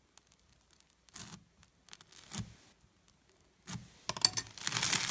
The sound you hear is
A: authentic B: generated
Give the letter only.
A